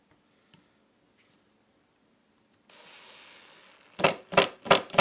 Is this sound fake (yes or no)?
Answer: no